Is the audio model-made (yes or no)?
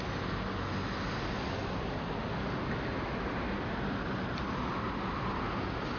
no